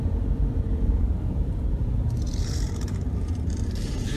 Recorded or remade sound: remade